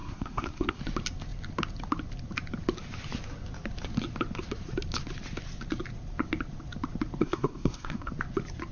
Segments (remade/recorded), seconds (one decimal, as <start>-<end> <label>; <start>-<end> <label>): 0.0-0.8 remade; 0.8-7.2 recorded; 7.2-8.1 remade; 8.1-8.7 recorded